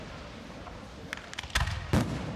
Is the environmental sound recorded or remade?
recorded